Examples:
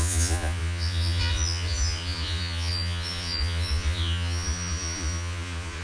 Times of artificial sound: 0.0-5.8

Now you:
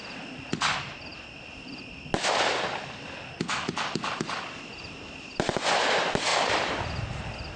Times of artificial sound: none

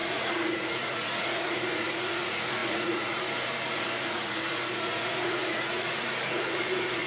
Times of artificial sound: 0.0-7.1

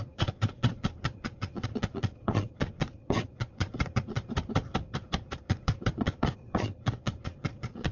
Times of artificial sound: 0.0-4.2; 5.4-7.9

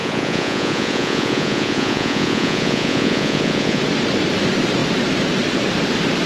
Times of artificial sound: 0.0-3.8

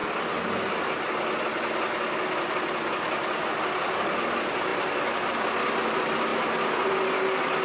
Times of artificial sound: none

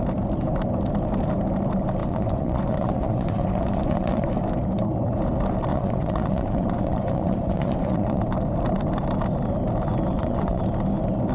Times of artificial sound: 2.0-4.3; 5.7-8.2; 10.1-10.6